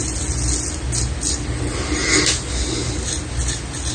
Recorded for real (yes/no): yes